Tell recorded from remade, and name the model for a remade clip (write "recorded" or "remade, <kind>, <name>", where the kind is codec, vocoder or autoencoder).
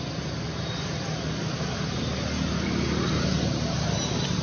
recorded